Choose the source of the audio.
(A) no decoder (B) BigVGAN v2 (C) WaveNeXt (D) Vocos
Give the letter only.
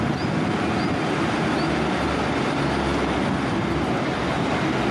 A